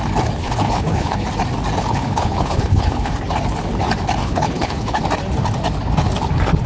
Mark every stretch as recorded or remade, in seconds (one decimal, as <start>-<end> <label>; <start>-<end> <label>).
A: 0.0-0.4 recorded; 0.4-1.3 remade; 1.3-1.9 recorded; 1.9-3.1 remade; 3.1-4.2 recorded; 4.2-5.0 remade; 5.0-6.7 recorded